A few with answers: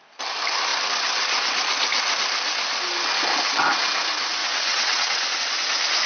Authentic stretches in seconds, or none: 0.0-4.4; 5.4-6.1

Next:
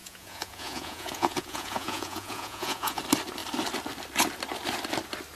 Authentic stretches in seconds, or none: 3.0-5.4

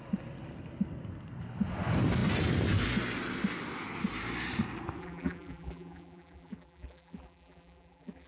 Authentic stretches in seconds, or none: 0.0-5.0

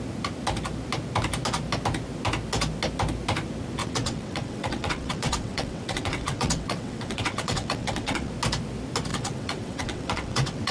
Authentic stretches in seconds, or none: 0.0-3.8; 8.3-9.1

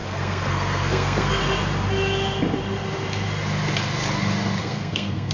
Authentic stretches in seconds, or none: 1.4-4.6

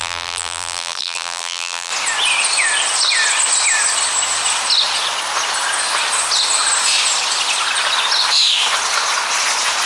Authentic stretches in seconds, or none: 1.9-9.9

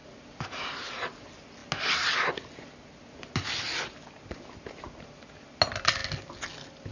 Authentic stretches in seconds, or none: 0.0-6.9

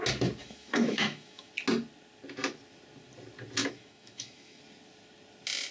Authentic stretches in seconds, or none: 0.0-0.4; 1.5-3.6; 4.6-5.7